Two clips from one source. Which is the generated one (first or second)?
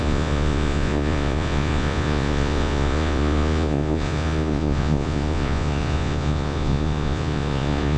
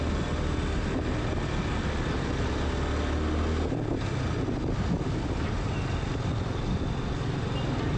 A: first